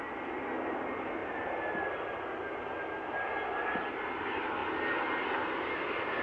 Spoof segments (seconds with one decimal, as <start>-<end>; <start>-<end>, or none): none